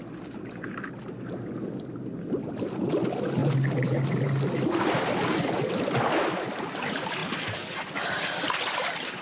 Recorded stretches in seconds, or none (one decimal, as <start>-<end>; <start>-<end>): 0.0-9.2

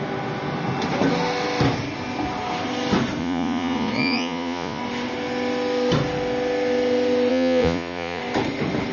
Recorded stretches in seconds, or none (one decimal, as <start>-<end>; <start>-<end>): 0.0-3.2; 4.8-7.3; 8.2-8.9

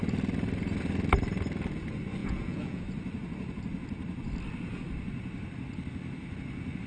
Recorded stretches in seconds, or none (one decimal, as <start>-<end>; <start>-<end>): 0.0-2.2; 2.8-6.9